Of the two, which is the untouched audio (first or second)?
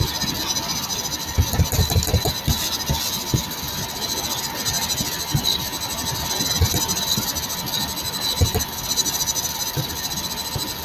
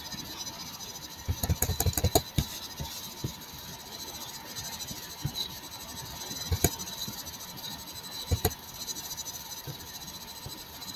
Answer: first